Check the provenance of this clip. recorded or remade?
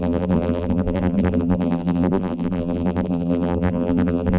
remade